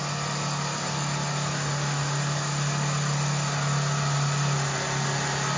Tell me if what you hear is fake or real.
real